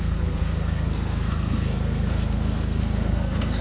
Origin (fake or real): fake